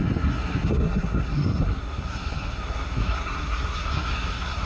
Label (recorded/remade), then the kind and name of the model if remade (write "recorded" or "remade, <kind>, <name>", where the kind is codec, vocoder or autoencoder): remade, codec, SNAC